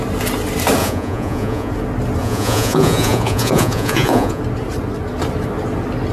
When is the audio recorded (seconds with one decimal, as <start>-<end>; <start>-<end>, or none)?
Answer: 0.0-0.8; 1.7-2.2; 4.4-6.1